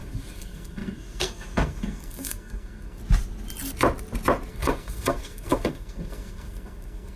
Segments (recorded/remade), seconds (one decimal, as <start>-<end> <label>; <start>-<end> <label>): 0.0-3.0 remade; 3.0-4.5 recorded; 4.5-7.2 remade